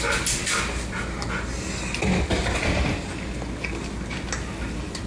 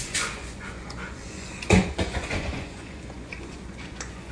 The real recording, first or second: first